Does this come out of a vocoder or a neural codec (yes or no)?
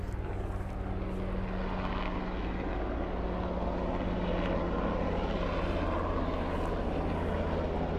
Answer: no